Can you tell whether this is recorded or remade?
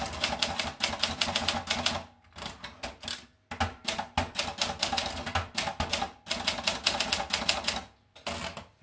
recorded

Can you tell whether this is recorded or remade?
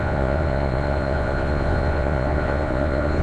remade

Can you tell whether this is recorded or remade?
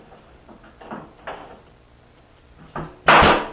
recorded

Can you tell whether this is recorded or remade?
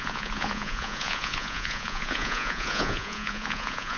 remade